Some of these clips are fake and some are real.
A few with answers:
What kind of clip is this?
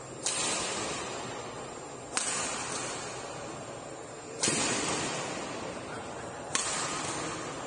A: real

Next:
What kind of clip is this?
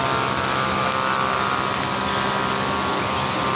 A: real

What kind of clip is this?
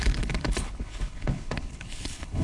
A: fake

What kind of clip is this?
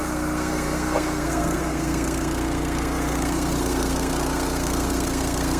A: fake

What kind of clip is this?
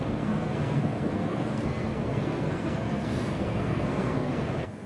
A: fake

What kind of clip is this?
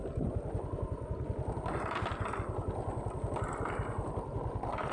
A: real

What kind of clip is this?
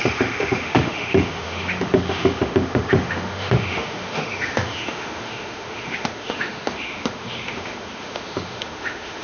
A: fake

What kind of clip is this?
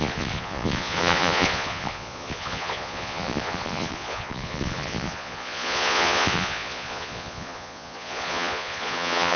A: fake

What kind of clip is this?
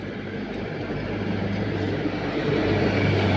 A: fake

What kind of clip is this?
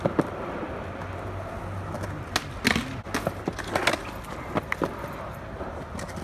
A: real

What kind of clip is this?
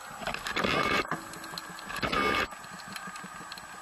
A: real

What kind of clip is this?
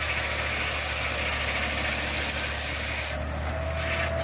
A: real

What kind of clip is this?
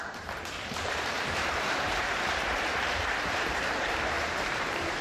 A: fake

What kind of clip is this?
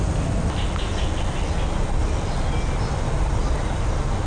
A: real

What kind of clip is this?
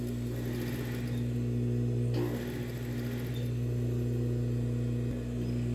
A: real